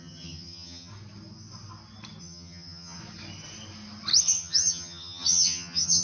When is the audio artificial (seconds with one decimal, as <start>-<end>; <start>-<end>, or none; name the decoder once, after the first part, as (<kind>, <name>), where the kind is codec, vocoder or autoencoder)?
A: 0.0-0.9 (vocoder, HiFi-GAN); 2.2-3.0; 4.2-6.0